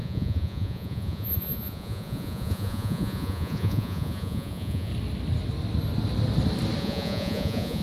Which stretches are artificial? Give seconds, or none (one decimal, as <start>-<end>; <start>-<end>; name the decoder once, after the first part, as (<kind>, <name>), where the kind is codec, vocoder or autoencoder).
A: 0.0-4.9 (vocoder, Vocos); 6.8-7.8